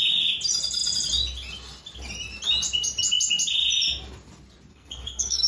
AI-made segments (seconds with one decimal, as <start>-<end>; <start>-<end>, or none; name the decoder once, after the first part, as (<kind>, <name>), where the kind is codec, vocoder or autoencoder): 4.7-5.5 (codec, SNAC)